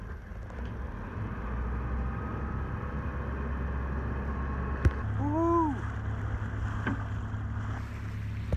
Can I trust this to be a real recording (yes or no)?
yes